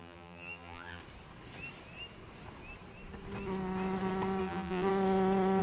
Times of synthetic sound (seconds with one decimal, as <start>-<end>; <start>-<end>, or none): 0.0-1.0; 4.4-4.9

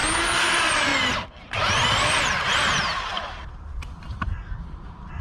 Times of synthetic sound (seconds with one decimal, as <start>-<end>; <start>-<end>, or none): 0.5-0.9; 1.4-5.2